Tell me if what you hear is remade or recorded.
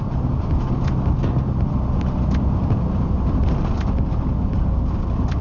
recorded